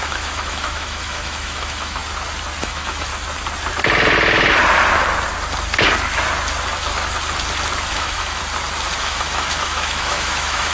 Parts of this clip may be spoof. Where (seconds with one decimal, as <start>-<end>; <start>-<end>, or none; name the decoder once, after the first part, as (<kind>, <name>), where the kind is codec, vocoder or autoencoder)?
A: 0.0-2.0 (autoencoder, DAC-VAE); 2.6-3.1; 7.9-8.4; 9.0-10.7